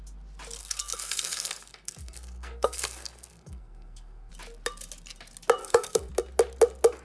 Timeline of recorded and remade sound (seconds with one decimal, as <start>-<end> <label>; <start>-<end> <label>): 0.0-0.6 recorded; 0.6-4.3 remade; 4.3-5.6 recorded; 5.6-6.1 remade; 6.1-7.0 recorded